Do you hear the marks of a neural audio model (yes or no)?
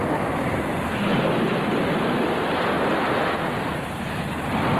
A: no